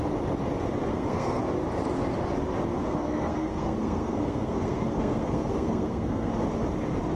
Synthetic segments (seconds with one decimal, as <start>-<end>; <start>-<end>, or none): 0.9-1.4; 2.8-6.3